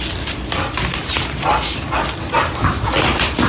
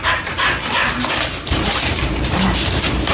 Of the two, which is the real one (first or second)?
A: first